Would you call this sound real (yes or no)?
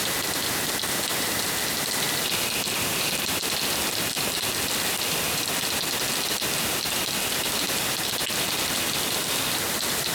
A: yes